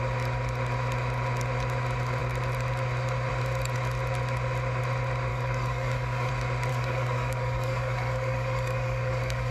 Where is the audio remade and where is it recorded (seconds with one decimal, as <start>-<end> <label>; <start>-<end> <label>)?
0.0-5.3 recorded; 5.3-6.3 remade; 6.3-6.7 recorded; 6.7-9.5 remade